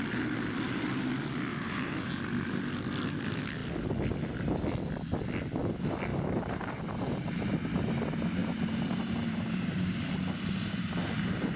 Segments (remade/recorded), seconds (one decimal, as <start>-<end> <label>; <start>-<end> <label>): 0.0-1.5 recorded; 1.5-2.1 remade; 2.1-6.1 recorded; 6.1-7.3 remade; 7.3-8.4 recorded; 8.4-9.9 remade; 9.9-11.6 recorded